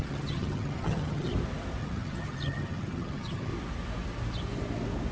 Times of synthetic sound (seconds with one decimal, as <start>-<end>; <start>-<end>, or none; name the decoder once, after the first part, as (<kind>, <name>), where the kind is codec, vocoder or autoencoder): 0.0-1.3 (vocoder, HiFi-GAN); 1.8-3.5